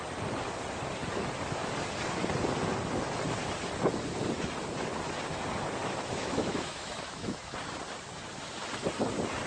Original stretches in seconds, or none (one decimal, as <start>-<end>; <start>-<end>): 0.0-5.8; 7.5-9.5